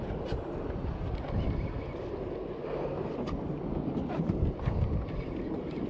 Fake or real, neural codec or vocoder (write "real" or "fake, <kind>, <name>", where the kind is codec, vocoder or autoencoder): real